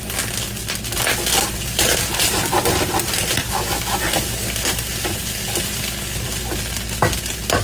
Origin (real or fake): real